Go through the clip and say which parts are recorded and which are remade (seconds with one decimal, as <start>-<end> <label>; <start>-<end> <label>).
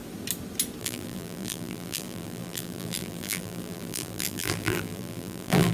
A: 0.0-0.8 recorded; 0.8-5.7 remade